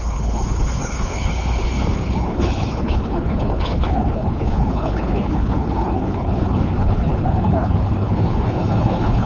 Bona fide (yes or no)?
no